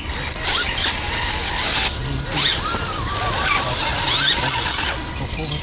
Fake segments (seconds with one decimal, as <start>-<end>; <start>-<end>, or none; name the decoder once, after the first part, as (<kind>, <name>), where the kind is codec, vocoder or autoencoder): none